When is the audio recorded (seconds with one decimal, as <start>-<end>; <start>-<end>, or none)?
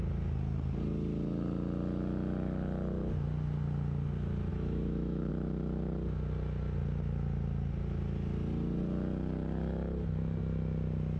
0.0-4.5; 5.3-11.2